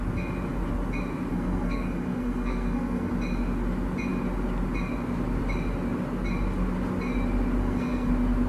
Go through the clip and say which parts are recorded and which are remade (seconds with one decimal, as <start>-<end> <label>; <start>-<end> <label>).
0.0-1.3 recorded; 1.3-3.1 remade; 3.1-7.6 recorded; 7.6-8.1 remade; 8.1-8.5 recorded